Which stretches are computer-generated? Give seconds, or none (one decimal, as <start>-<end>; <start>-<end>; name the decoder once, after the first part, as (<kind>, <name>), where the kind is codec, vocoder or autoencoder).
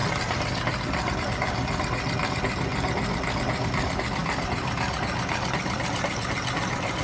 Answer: 0.0-2.7 (vocoder, BigVGAN v2); 3.6-7.0